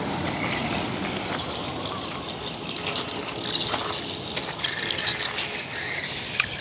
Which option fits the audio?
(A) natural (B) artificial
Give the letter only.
A